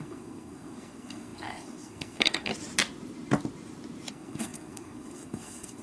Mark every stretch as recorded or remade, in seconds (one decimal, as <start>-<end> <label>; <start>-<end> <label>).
0.0-2.5 remade; 2.5-4.1 recorded; 4.1-5.8 remade